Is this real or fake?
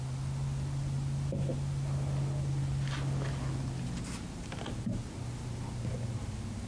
real